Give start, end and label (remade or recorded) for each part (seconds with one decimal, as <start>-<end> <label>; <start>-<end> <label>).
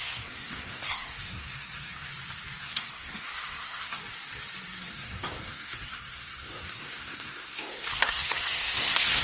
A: 0.0-2.1 remade; 2.1-2.6 recorded; 2.6-4.0 remade; 4.0-4.8 recorded; 4.8-9.2 remade